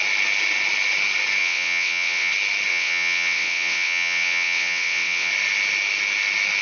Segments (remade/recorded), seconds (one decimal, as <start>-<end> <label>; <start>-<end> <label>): 0.0-1.4 recorded; 1.4-2.3 remade; 2.3-2.7 recorded; 2.7-5.3 remade; 5.3-6.6 recorded